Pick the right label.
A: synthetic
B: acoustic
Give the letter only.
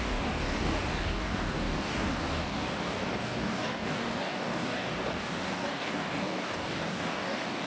A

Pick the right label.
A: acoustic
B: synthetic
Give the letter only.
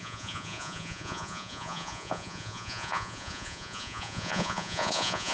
B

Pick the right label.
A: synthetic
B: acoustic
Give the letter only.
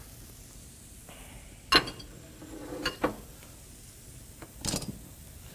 B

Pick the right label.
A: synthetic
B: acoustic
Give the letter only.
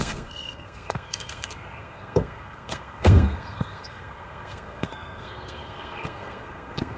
A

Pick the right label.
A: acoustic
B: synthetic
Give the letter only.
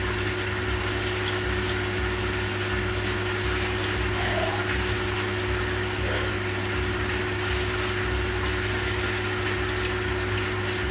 A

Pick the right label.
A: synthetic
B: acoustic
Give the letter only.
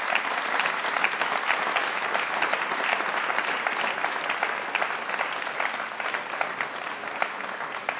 B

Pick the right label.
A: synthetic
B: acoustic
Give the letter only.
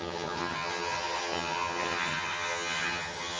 A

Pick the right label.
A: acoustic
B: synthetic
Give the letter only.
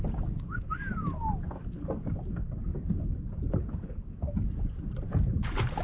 A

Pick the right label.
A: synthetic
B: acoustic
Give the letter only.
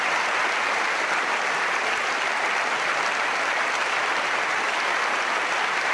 B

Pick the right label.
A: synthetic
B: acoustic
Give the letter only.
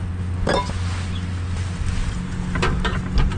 B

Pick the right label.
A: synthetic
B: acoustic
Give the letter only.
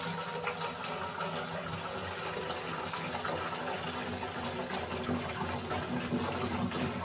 B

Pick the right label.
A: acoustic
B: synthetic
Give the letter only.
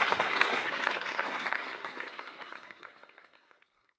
B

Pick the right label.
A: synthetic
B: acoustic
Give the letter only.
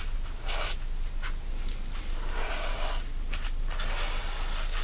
B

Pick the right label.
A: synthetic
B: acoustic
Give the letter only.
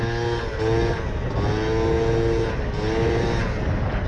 B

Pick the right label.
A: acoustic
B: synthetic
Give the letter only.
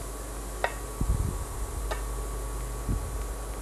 A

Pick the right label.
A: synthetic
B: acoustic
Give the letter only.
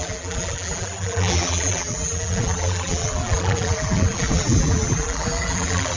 A